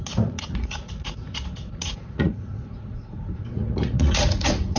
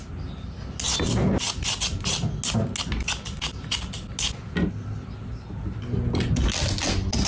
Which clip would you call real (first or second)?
second